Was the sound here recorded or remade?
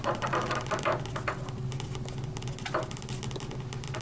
recorded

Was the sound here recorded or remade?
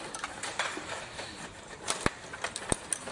recorded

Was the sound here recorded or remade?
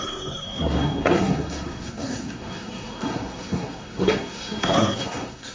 remade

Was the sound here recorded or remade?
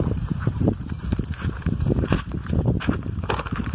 remade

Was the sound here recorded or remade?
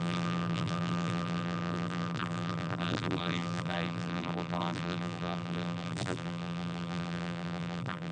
remade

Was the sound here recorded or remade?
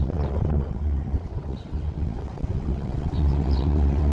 remade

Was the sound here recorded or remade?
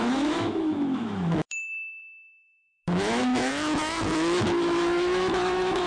remade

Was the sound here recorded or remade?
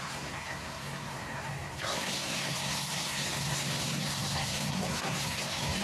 remade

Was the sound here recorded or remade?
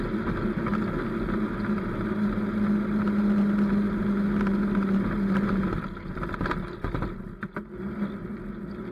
recorded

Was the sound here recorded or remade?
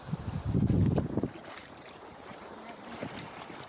remade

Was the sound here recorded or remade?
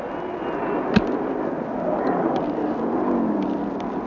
recorded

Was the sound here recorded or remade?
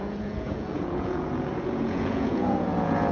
remade